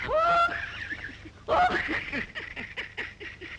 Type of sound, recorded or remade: recorded